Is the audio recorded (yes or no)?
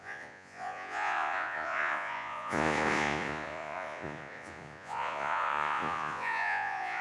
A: no